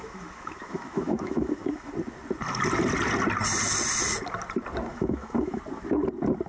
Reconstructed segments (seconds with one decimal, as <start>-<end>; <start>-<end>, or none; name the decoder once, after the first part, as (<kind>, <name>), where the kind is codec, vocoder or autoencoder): 0.0-1.9 (autoencoder, DAC-VAE); 4.9-5.6